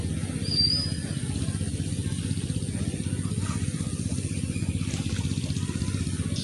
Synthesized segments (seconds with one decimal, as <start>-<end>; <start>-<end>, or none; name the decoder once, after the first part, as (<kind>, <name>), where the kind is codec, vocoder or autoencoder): none